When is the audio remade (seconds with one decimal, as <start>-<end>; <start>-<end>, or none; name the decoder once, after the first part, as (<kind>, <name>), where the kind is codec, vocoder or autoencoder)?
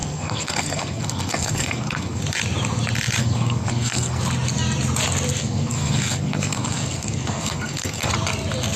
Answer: 0.0-2.2 (codec, SNAC); 3.2-4.2; 5.4-8.1